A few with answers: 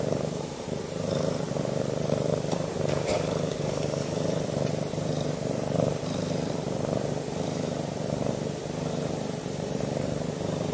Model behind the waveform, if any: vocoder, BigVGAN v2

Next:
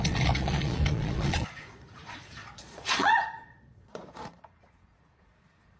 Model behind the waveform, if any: vocoder, Vocos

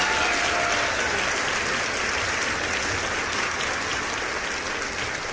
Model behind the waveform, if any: none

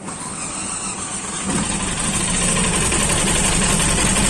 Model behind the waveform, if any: none